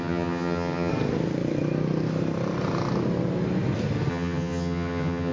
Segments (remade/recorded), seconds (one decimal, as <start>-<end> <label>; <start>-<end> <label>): 0.0-0.9 remade; 0.9-4.1 recorded; 4.1-5.3 remade